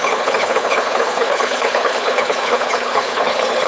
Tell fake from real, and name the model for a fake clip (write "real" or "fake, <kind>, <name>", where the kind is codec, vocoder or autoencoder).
fake, codec, HILCodec